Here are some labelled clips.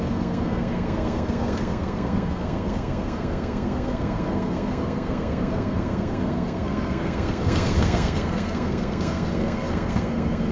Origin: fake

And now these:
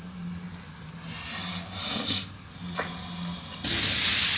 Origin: real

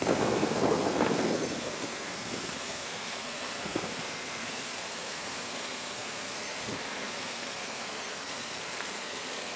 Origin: fake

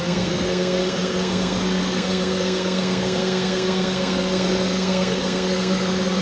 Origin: fake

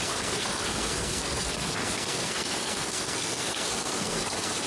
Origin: fake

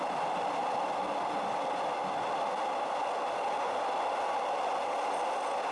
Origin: real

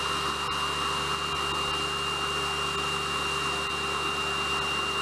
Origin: real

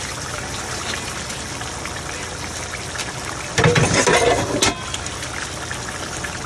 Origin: real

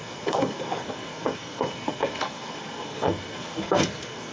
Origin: fake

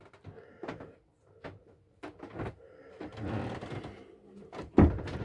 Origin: real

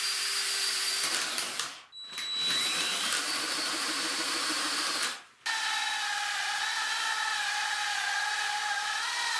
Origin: real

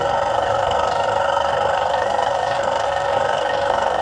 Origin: fake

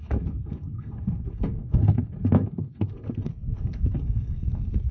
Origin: fake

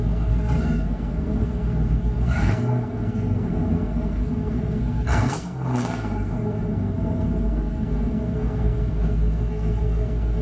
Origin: fake